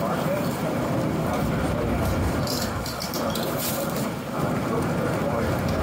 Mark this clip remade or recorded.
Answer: remade